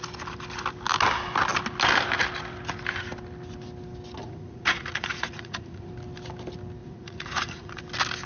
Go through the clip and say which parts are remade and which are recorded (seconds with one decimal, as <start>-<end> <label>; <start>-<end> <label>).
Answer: 0.0-4.2 recorded; 4.2-5.9 remade; 5.9-6.8 recorded; 6.8-7.8 remade; 7.8-8.3 recorded